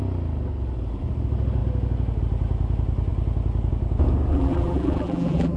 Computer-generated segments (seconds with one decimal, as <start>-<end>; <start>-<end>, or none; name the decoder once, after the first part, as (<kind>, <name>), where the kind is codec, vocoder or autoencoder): 4.3-5.6 (vocoder, BigVGAN v2)